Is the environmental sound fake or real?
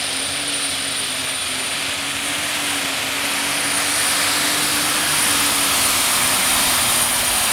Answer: real